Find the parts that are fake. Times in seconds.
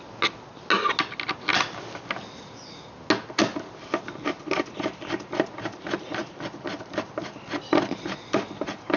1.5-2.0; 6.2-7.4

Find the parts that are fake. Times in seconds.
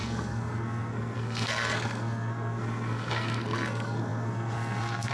0.0-5.1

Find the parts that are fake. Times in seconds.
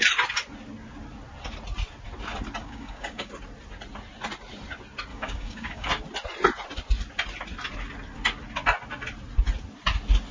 2.6-3.3; 5.1-5.9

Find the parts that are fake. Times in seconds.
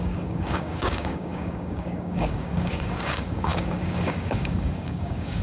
0.0-5.4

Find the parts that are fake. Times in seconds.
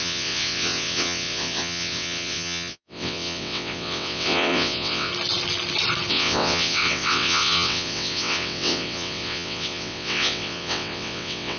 0.0-5.1; 6.1-11.6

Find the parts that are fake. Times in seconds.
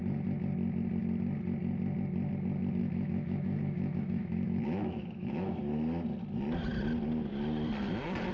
2.8-5.6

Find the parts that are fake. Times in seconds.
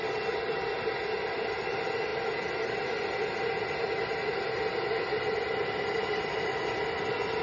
none